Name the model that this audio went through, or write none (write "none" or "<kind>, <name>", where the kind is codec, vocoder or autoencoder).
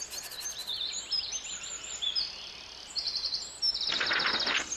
none